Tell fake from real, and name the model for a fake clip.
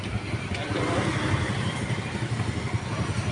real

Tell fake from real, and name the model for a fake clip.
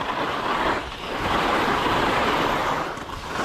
real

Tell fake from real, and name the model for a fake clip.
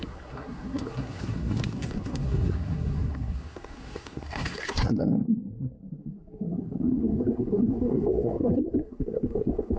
fake, codec, SNAC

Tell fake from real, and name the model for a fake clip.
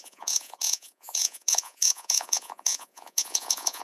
fake, vocoder, Vocos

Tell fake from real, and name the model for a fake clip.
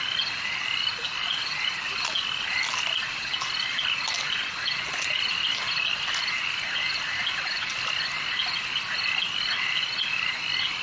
real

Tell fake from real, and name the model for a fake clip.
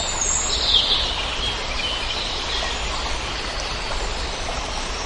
real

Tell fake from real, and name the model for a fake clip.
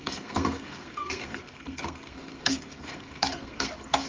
fake, codec, SNAC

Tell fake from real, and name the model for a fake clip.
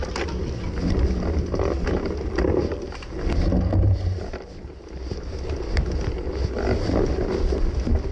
real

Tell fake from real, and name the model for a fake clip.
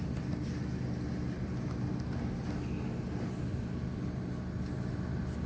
real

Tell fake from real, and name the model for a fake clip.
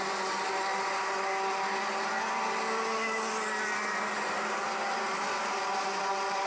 real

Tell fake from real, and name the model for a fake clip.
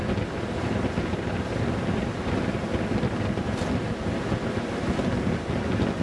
real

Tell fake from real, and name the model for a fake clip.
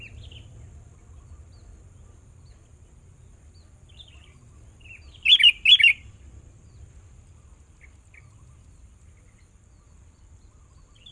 real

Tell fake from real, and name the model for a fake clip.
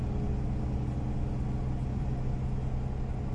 real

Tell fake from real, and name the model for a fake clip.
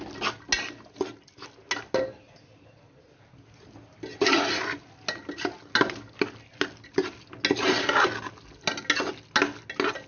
real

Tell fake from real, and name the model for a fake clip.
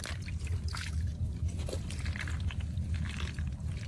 real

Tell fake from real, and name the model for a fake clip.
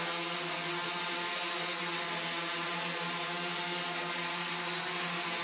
real